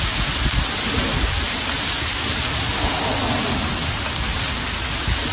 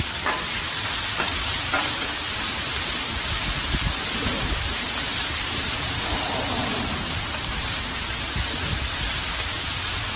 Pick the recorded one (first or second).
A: first